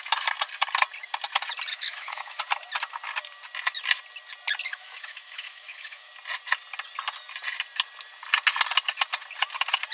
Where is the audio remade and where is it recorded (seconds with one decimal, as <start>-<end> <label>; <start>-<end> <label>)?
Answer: 0.0-1.7 recorded; 1.7-2.4 remade; 2.4-4.7 recorded; 4.7-6.1 remade; 6.1-9.9 recorded